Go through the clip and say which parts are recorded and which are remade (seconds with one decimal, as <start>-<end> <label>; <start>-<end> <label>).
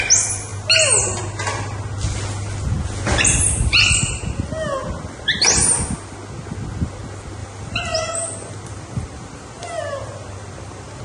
0.0-7.4 recorded; 7.4-11.0 remade